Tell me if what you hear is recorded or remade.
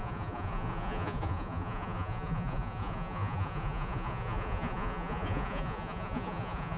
remade